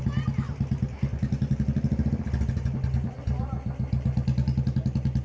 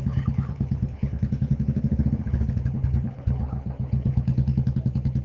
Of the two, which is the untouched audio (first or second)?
first